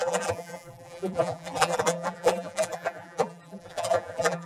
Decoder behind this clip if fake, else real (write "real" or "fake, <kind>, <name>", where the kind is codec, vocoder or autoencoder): fake, vocoder, BigVGAN v2